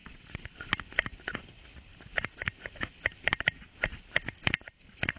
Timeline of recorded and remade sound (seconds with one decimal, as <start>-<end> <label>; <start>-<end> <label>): 0.0-0.7 remade; 0.7-5.2 recorded